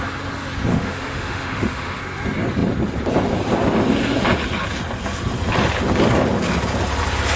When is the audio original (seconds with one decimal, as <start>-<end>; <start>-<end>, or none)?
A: 0.0-0.7; 2.0-7.4